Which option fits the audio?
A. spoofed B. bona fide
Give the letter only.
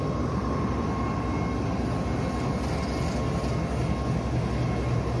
B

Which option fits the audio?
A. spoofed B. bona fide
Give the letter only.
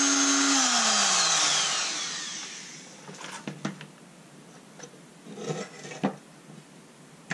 B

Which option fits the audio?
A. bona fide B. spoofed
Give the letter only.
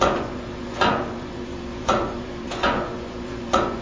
B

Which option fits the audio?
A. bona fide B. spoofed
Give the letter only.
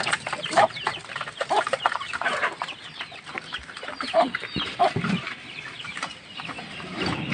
B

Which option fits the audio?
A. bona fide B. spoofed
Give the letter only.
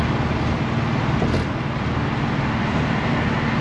A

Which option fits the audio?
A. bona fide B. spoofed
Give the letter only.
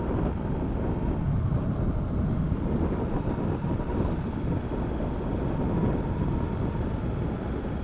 A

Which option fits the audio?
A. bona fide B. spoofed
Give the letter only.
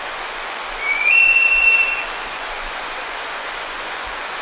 B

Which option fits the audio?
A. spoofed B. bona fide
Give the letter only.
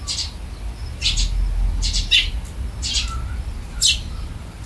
B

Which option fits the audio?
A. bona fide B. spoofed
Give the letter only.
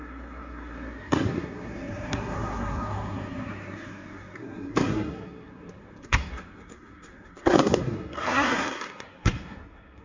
B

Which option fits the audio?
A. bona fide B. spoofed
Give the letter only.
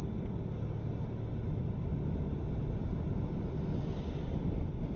A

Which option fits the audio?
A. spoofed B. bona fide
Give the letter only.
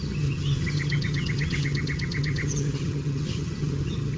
A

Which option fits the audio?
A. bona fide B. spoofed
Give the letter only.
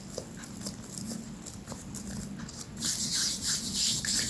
A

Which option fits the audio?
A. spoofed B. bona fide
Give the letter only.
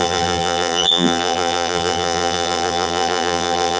A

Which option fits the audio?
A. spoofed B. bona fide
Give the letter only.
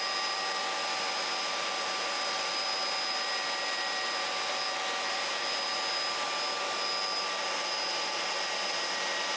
B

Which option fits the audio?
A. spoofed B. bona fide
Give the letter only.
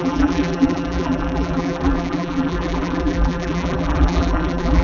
A